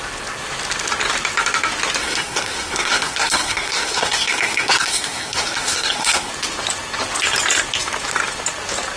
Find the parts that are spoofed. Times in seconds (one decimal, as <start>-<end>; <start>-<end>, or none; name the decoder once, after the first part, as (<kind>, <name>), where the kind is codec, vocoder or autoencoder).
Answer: 2.0-6.3 (codec, SNAC)